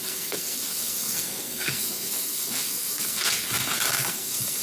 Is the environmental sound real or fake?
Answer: fake